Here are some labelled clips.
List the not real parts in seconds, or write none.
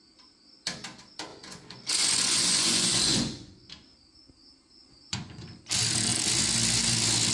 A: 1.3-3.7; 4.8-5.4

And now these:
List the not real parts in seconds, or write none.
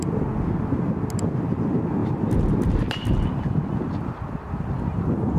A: none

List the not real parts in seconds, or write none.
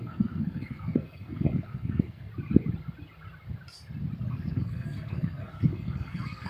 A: 0.0-2.3; 4.3-6.5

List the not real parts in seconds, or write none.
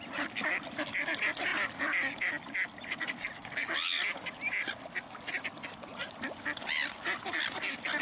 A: none